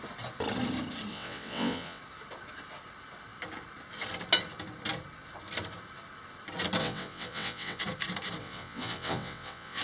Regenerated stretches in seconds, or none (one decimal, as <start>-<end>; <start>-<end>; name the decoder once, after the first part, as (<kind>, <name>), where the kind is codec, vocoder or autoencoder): 1.1-2.0 (vocoder, WaveNeXt); 6.8-7.8; 8.4-9.8